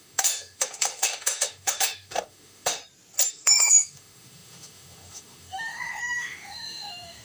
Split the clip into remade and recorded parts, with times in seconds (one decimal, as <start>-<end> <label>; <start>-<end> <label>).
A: 0.0-2.8 remade; 2.8-3.3 recorded; 3.3-7.2 remade

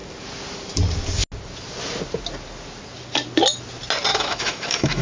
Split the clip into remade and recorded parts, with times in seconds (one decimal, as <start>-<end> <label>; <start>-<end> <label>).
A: 0.0-4.1 recorded; 4.1-5.0 remade

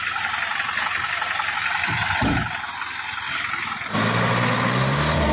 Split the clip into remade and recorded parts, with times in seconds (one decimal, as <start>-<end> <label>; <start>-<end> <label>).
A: 0.0-5.3 recorded

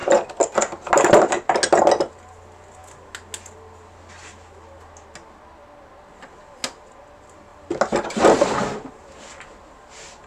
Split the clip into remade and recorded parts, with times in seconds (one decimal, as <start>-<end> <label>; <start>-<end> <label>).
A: 0.0-10.3 recorded

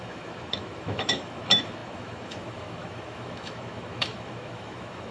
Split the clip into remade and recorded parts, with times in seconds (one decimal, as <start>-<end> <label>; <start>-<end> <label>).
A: 0.0-5.1 remade